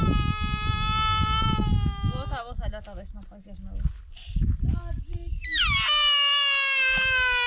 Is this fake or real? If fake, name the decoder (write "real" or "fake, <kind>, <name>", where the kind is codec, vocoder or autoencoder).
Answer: real